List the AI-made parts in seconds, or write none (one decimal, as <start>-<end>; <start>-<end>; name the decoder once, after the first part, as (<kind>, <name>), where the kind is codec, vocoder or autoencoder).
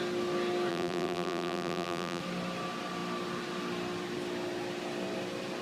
0.7-2.2 (vocoder, BigVGAN v2)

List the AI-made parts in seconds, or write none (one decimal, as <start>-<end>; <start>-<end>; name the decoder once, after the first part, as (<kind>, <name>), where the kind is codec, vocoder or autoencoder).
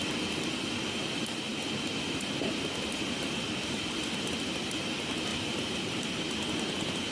5.3-6.1 (vocoder, BigVGAN v2)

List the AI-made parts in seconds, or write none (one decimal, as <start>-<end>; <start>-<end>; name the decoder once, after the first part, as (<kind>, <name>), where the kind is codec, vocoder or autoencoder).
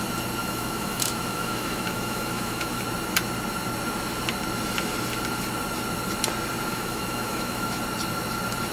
0.4-2.8 (autoencoder, DAC-VAE); 6.7-7.8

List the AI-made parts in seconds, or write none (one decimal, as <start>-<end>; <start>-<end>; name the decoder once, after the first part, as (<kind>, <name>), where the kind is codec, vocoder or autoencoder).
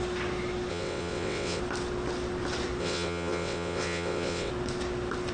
0.7-1.6 (vocoder, WaveNeXt); 2.8-4.5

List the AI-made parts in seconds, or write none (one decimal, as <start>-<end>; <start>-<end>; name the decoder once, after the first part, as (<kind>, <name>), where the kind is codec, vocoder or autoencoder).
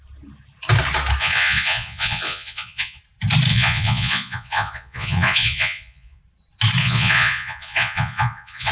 1.2-3.0 (vocoder, Vocos); 3.5-6.2; 6.8-8.7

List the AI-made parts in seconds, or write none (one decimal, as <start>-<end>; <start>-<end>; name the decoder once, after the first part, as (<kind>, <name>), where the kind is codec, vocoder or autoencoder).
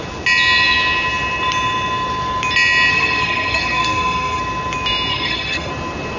2.9-4.4 (codec, SNAC); 5.1-5.7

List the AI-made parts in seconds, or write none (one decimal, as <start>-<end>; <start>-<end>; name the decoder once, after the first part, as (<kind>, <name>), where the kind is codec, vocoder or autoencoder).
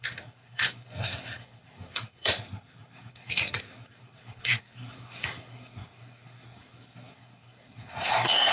0.0-8.5 (codec, SNAC)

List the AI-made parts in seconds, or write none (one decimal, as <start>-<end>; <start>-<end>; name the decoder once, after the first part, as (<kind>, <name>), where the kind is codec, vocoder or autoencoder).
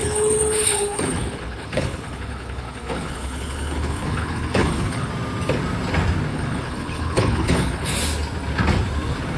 0.0-5.1 (codec, HILCodec); 6.3-7.9